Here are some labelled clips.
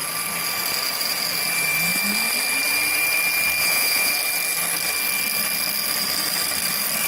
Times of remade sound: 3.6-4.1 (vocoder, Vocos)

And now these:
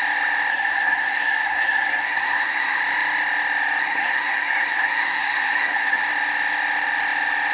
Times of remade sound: 0.5-2.8 (codec, SNAC); 3.8-6.0

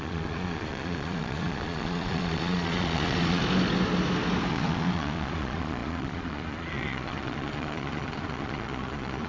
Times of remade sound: 0.0-3.4 (vocoder, Vocos); 4.5-9.3

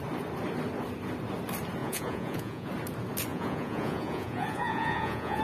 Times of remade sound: 1.8-2.7 (vocoder, Vocos); 3.3-5.4

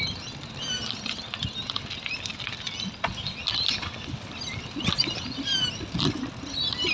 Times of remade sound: none

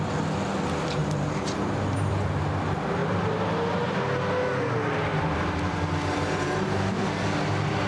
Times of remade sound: 1.0-2.1 (vocoder, BigVGAN v2); 3.0-3.8; 5.1-7.0

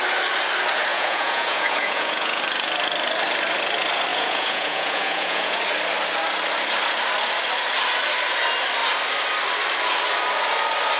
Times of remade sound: 0.9-2.4 (vocoder, Vocos); 4.1-5.6

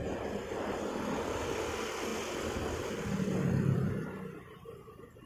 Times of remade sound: none